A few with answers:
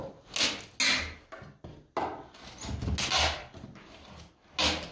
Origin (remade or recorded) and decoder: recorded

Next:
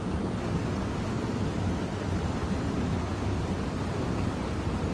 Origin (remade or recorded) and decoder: recorded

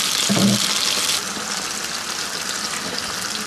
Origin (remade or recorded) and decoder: recorded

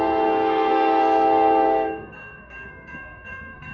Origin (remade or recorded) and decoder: remade, codec, SNAC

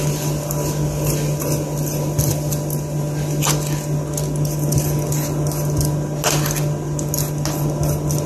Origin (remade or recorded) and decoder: recorded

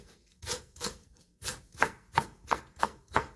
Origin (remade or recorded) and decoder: remade, codec, SNAC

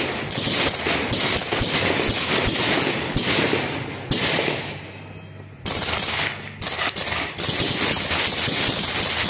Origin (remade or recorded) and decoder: recorded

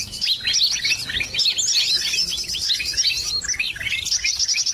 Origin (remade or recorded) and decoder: recorded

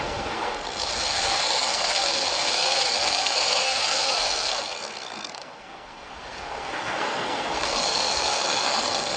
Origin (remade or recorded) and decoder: remade, codec, SNAC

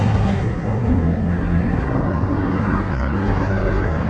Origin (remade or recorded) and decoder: remade, codec, SNAC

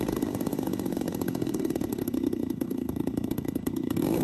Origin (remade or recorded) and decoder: remade, codec, SNAC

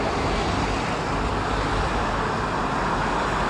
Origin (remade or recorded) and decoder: recorded